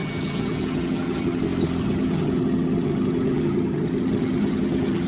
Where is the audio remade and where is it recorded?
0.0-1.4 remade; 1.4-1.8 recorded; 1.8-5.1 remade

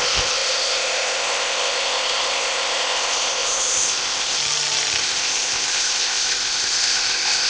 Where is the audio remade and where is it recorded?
0.0-4.4 remade; 4.4-5.0 recorded; 5.0-7.5 remade

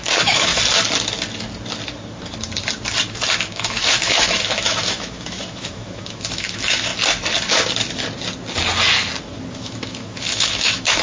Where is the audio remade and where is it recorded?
0.0-0.5 remade; 0.5-3.5 recorded; 3.5-6.9 remade; 6.9-9.5 recorded; 9.5-11.0 remade

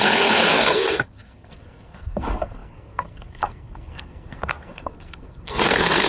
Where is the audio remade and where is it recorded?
0.0-6.1 remade

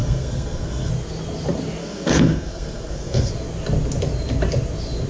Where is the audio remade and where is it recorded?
0.0-0.9 remade; 0.9-1.8 recorded; 1.8-3.3 remade; 3.3-5.1 recorded

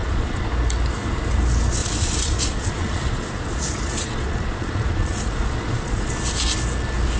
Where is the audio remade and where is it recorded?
0.0-0.5 remade; 0.5-1.8 recorded; 1.8-6.1 remade; 6.1-7.2 recorded